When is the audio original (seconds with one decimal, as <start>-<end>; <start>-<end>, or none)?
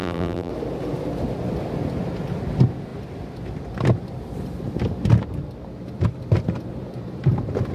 0.5-7.7